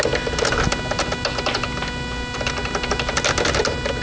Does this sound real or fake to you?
real